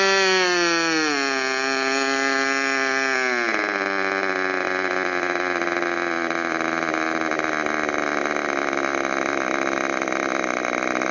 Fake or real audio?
real